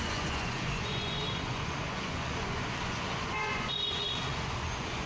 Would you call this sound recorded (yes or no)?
no